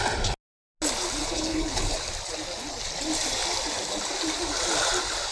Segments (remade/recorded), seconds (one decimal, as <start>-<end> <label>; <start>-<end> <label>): 0.0-1.2 recorded; 1.2-2.1 remade; 2.1-5.3 recorded